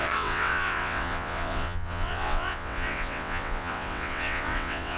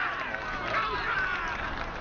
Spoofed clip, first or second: first